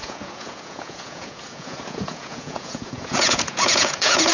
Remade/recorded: remade